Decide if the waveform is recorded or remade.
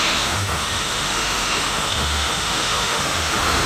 remade